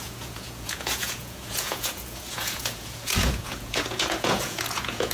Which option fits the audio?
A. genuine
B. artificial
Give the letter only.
B